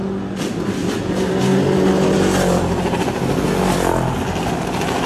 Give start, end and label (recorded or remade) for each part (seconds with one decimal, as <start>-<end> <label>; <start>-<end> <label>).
0.0-5.1 recorded

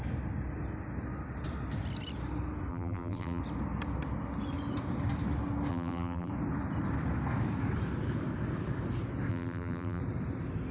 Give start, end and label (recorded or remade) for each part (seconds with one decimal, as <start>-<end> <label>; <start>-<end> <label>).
0.0-2.7 recorded; 2.7-3.4 remade; 3.4-5.7 recorded; 5.7-6.3 remade; 6.3-9.3 recorded; 9.3-10.0 remade; 10.0-10.7 recorded